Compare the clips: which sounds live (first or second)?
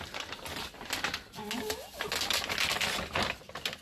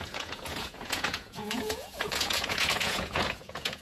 first